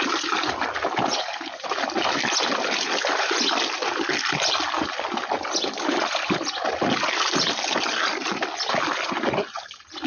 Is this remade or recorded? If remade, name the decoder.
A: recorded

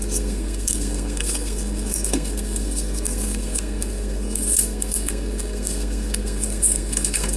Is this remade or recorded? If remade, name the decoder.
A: remade, codec, SNAC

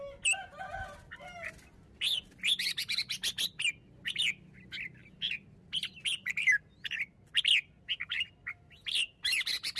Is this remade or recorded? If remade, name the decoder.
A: recorded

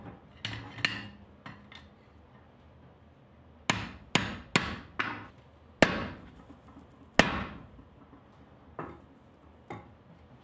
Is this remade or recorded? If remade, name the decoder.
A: recorded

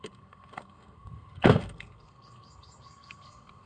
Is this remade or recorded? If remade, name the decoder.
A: remade, codec, SNAC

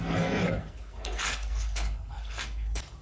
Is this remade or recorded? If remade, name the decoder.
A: remade, codec, SNAC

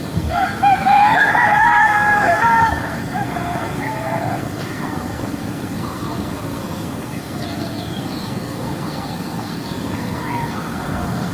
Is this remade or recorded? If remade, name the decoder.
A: remade, codec, SNAC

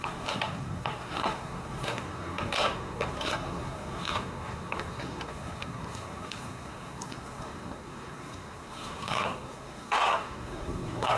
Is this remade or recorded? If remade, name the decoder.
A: remade, codec, SNAC